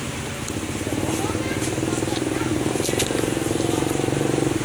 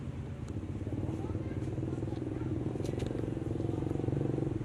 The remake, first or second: second